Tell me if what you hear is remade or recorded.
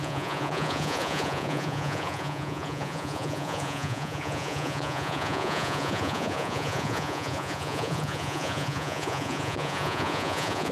remade